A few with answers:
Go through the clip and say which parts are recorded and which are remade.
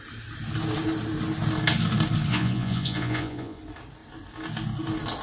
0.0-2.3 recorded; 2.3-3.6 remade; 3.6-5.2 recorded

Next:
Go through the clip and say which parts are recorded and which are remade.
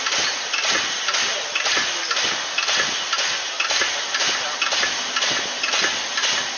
0.0-6.6 recorded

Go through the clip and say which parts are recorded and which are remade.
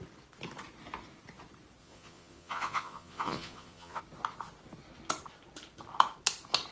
0.0-1.8 recorded; 1.8-4.0 remade; 4.0-6.7 recorded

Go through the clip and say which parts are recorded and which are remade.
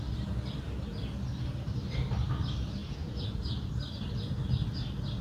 0.0-2.8 recorded; 2.8-3.7 remade; 3.7-5.2 recorded